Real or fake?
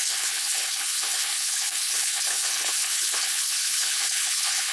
fake